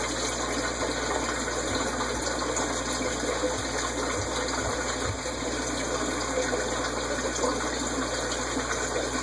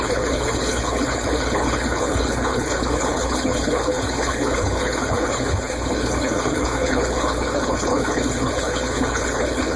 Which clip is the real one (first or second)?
first